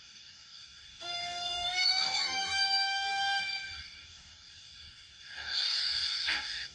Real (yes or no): no